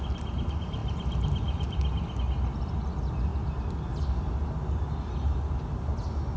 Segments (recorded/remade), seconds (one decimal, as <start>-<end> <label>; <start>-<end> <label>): 0.0-6.4 recorded